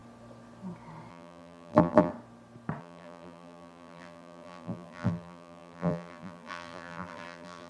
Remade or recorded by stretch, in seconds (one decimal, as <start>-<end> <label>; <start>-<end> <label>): 0.0-1.1 recorded; 1.1-2.1 remade; 2.1-2.8 recorded; 2.8-7.7 remade